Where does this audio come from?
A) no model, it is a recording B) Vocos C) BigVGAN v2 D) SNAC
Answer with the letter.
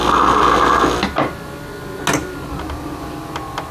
A